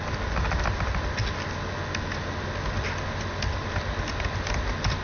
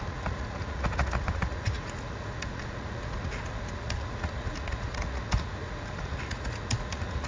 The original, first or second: first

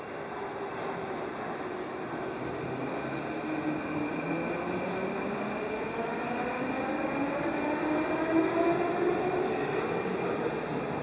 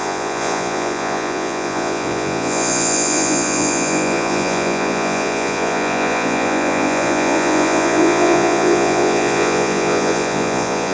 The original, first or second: first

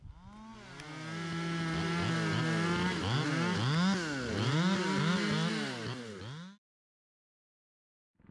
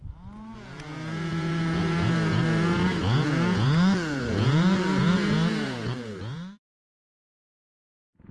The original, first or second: first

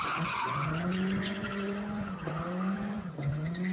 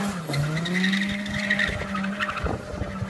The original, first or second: second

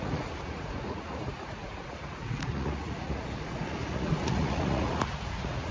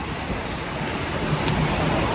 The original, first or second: second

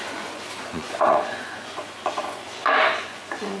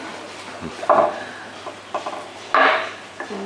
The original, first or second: second